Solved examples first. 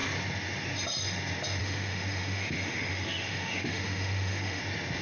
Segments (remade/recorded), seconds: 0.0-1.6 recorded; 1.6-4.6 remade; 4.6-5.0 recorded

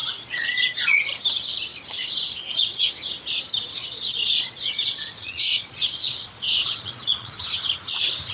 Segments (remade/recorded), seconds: 0.0-1.0 remade; 1.0-1.7 recorded; 1.7-2.9 remade; 2.9-3.8 recorded; 3.8-7.4 remade; 7.4-8.3 recorded

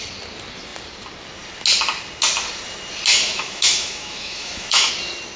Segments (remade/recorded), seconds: 0.0-3.1 recorded; 3.1-4.9 remade; 4.9-5.4 recorded

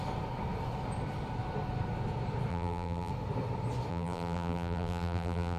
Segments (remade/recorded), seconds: 0.0-2.5 recorded; 2.5-3.1 remade; 3.1-3.9 recorded; 3.9-5.6 remade

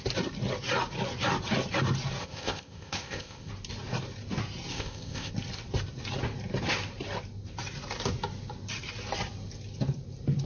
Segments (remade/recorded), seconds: 0.0-2.2 recorded; 2.2-3.5 remade; 3.5-4.7 recorded; 4.7-5.3 remade; 5.3-10.5 recorded

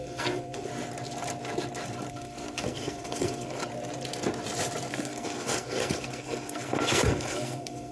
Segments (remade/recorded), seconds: 0.0-0.7 remade; 0.7-2.1 recorded; 2.1-3.6 remade; 3.6-4.9 recorded; 4.9-7.9 remade

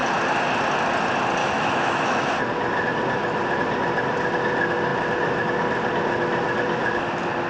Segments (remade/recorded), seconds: 0.0-1.4 recorded; 1.4-2.3 remade; 2.3-7.5 recorded

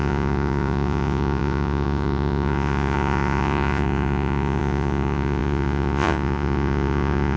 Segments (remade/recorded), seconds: 0.0-7.4 remade